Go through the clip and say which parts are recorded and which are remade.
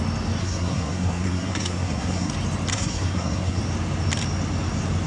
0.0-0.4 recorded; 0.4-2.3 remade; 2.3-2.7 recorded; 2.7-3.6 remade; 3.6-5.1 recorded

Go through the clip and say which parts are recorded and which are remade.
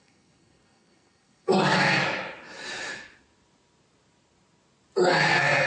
0.0-2.0 remade; 2.0-5.3 recorded; 5.3-5.7 remade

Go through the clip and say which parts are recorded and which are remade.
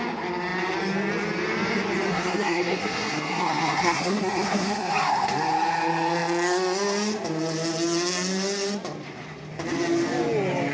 0.0-2.1 recorded; 2.1-4.9 remade; 4.9-10.7 recorded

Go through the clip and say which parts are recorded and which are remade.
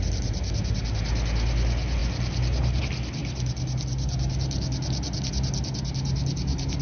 0.0-6.8 recorded